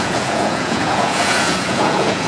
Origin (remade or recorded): remade